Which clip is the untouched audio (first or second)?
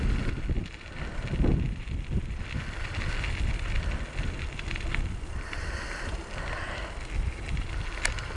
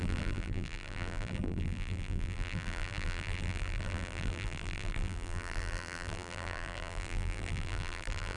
first